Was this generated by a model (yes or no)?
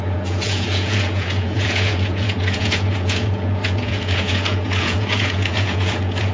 yes